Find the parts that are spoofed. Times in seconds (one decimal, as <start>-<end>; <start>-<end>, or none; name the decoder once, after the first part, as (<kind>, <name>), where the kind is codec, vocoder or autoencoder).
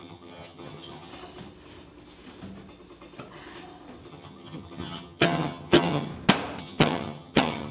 0.0-1.1 (vocoder, HiFi-GAN); 4.1-6.1; 6.6-7.7